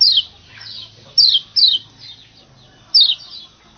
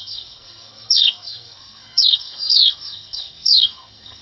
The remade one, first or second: second